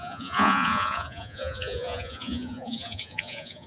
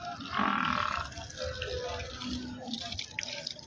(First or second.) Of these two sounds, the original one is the second